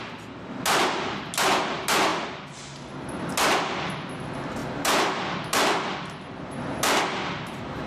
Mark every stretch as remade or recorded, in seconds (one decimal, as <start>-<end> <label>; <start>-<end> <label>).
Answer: 0.0-7.9 recorded